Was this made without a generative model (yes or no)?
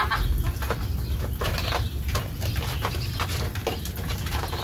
yes